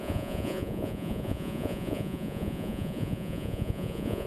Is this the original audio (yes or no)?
no